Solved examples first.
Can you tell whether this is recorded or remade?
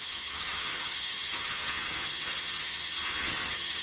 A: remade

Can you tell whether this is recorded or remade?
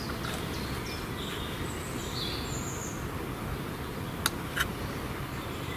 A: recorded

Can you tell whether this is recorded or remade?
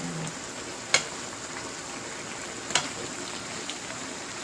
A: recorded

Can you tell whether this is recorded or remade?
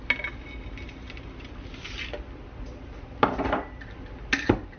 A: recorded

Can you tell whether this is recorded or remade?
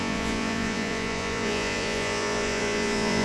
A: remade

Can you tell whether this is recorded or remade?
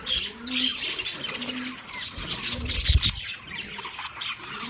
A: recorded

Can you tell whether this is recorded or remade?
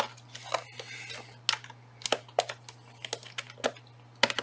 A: recorded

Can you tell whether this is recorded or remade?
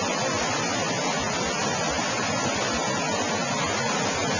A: recorded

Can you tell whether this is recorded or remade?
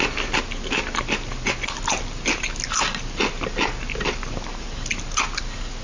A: recorded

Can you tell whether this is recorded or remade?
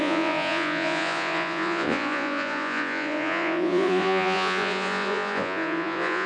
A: remade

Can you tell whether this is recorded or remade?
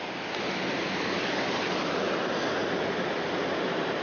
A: recorded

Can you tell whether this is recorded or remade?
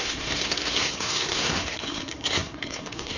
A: remade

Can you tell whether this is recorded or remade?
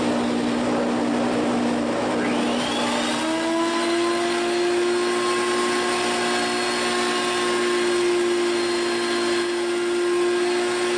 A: recorded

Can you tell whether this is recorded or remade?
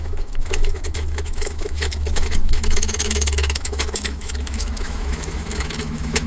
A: remade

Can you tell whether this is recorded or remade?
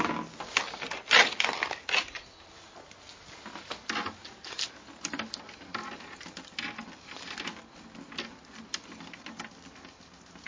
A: recorded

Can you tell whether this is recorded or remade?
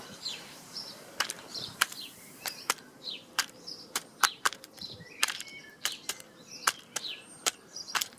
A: remade